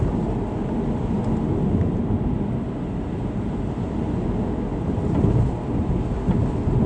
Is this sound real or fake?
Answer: real